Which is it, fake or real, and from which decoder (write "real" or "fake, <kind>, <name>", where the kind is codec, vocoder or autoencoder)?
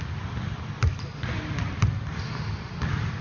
real